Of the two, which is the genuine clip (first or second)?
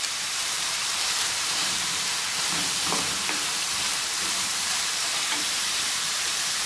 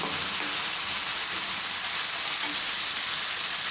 second